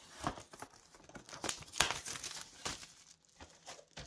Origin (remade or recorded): recorded